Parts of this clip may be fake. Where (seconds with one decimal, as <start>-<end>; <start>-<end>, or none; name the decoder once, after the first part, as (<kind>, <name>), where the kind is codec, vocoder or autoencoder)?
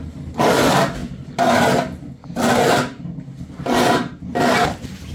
none